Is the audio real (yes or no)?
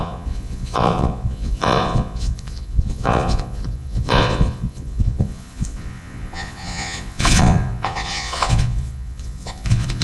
no